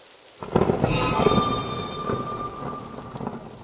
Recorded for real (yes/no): yes